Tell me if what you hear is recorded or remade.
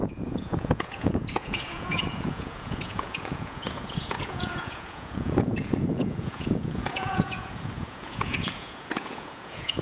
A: remade